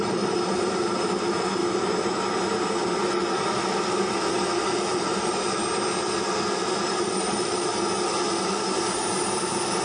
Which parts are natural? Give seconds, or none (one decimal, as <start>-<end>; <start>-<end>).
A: 1.6-4.6; 5.6-6.8; 7.7-8.4